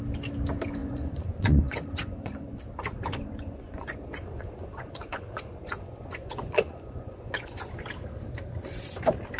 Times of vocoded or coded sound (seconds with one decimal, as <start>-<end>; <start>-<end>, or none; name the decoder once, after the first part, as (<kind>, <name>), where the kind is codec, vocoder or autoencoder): 0.8-2.6 (vocoder, Vocos); 3.1-7.7